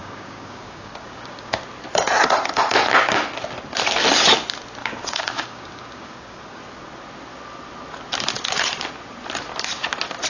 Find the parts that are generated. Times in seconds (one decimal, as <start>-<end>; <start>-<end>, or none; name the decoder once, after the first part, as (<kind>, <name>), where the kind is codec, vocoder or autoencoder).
0.0-1.6 (codec, DAC); 4.8-6.6